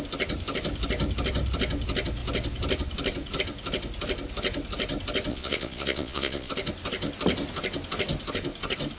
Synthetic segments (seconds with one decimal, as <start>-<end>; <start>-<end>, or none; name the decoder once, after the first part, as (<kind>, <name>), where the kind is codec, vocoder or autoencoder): 5.3-6.5 (vocoder, Vocos)

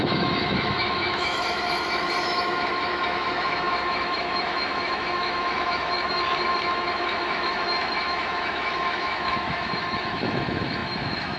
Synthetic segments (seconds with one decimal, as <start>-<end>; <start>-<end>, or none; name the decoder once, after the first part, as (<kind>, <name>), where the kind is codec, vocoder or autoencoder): 0.0-11.4 (autoencoder, DAC-VAE)